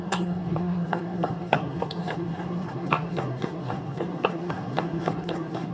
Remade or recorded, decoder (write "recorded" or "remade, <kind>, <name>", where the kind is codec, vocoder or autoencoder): remade, codec, SNAC